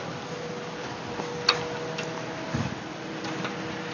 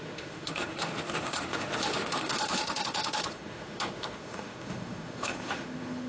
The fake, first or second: second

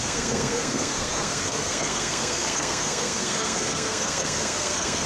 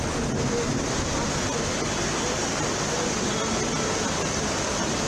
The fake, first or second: first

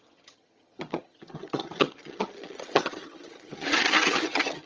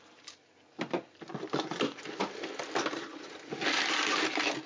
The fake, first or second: first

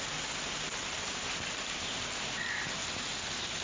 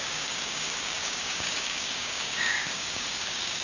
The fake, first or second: second